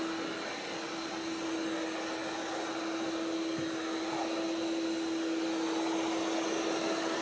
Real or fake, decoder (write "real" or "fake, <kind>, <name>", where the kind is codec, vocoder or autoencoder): real